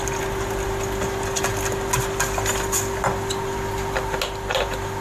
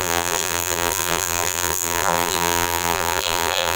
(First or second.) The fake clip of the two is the second